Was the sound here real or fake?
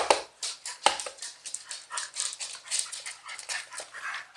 real